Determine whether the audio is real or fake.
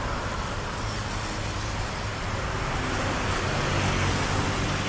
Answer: real